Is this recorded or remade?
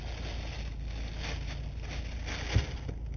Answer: recorded